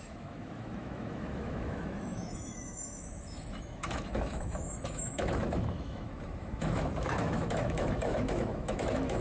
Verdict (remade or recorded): remade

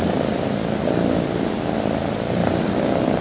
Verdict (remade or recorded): recorded